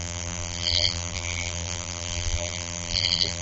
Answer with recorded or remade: remade